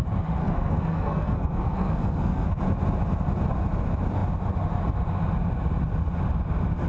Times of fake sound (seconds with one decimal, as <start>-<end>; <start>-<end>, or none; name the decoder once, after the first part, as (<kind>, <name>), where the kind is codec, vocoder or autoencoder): 0.4-2.6 (codec, SNAC)